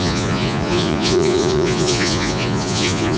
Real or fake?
fake